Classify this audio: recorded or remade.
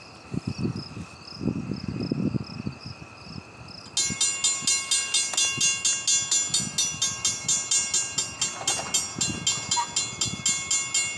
recorded